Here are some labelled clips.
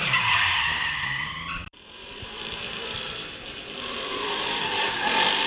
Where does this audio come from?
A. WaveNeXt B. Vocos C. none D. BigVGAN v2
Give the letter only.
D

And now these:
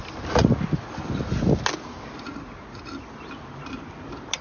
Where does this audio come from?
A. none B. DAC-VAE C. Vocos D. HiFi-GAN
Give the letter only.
A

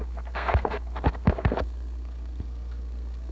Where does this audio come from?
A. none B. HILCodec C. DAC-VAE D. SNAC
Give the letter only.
D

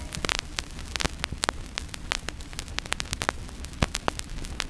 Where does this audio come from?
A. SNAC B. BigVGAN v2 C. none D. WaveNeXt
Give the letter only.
C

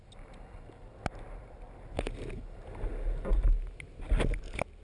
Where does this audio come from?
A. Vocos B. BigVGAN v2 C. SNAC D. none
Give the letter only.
D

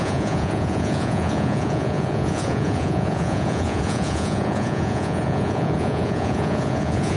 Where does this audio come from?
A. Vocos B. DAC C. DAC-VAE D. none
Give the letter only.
A